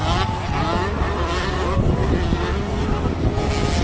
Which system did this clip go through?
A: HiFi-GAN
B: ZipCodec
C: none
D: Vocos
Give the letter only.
C